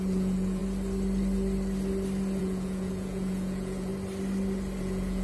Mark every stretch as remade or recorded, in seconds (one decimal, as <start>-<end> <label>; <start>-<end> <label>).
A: 0.0-0.6 remade; 0.6-2.4 recorded; 2.4-3.9 remade; 3.9-4.8 recorded; 4.8-5.2 remade